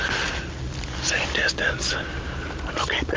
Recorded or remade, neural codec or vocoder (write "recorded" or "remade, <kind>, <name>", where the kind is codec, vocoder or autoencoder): recorded